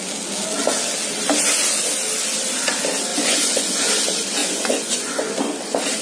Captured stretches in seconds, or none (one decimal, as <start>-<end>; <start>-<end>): 0.0-3.1; 4.0-4.4; 5.4-6.0